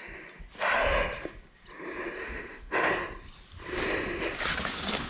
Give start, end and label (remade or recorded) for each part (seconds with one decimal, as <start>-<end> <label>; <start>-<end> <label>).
0.0-2.2 recorded; 2.2-2.9 remade; 2.9-5.1 recorded